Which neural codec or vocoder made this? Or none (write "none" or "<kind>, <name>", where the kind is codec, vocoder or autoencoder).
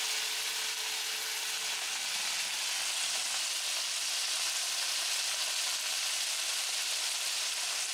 none